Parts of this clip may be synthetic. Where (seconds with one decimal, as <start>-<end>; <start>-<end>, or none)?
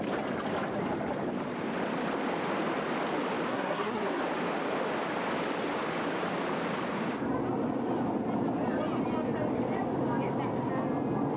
3.5-4.2